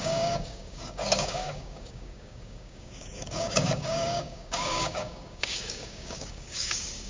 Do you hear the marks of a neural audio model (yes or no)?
yes